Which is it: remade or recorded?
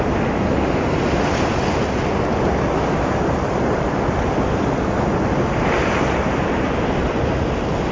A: recorded